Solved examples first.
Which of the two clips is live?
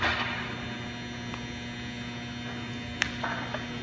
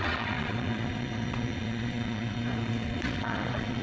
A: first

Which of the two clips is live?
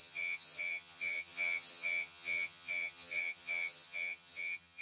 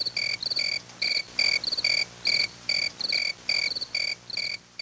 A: second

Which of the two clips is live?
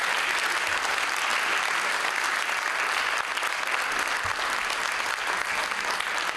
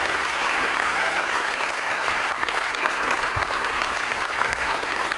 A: first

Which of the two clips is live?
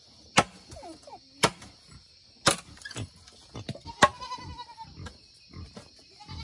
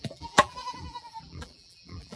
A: first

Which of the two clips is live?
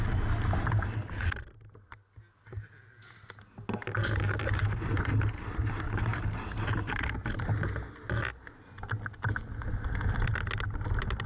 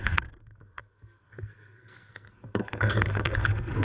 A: first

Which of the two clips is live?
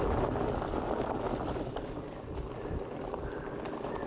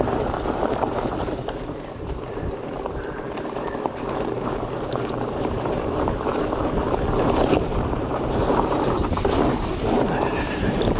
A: first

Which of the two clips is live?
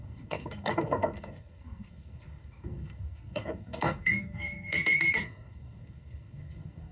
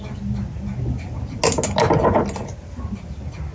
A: second